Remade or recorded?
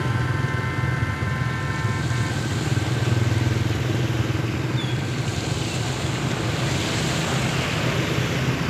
recorded